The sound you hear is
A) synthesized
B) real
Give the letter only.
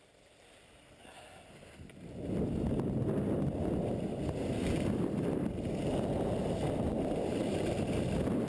B